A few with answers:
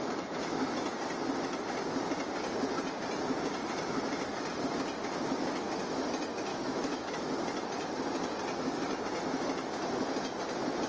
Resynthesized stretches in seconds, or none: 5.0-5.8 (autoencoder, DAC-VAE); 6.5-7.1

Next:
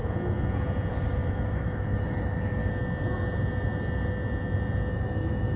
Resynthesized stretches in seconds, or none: 0.9-2.6 (autoencoder, DAC-VAE); 4.9-5.6

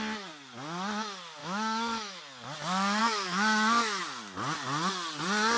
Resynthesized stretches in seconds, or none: 1.4-2.2 (autoencoder, DAC-VAE); 3.0-4.0

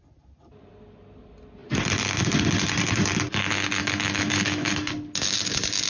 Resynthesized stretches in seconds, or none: 3.8-4.7 (autoencoder, DAC-VAE)

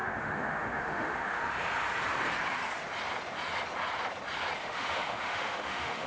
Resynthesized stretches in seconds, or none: 0.0-1.4 (autoencoder, DAC-VAE); 4.6-6.1

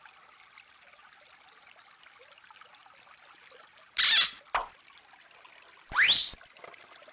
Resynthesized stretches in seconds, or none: none